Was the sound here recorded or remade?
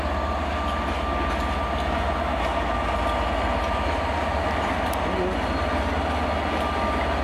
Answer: recorded